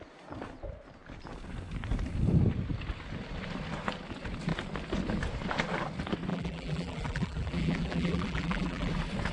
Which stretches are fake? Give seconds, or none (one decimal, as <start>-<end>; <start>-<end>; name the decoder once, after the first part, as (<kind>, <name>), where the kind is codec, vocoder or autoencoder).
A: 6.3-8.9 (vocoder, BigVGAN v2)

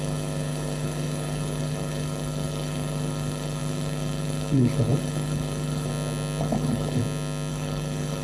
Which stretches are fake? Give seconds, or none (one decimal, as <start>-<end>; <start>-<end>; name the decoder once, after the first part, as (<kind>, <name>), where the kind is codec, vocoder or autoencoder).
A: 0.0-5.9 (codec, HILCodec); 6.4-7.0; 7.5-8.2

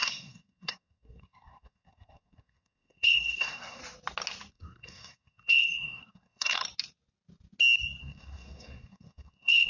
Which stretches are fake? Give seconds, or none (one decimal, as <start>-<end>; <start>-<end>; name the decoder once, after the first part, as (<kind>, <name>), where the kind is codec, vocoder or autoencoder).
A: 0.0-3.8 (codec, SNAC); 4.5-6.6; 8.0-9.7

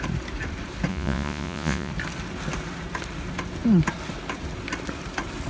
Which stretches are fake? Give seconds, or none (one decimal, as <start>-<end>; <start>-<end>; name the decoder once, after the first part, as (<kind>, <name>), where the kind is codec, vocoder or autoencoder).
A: 0.9-1.9 (vocoder, Vocos)